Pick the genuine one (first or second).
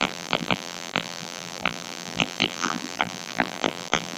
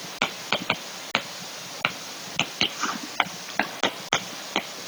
second